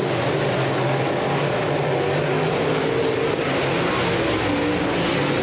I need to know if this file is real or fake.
real